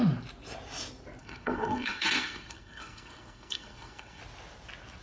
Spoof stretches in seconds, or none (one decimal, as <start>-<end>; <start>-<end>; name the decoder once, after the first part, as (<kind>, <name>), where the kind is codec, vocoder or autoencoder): 1.2-4.2 (codec, SNAC)